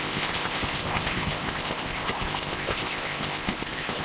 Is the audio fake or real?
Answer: fake